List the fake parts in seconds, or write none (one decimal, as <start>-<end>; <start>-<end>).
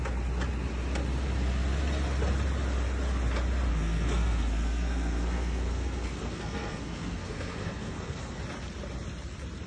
3.7-8.4